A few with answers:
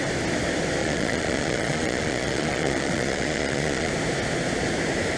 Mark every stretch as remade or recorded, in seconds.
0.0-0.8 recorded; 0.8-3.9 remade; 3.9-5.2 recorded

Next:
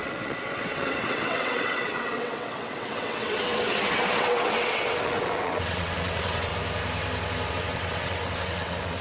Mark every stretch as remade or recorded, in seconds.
0.0-6.5 remade; 6.5-7.5 recorded; 7.5-9.0 remade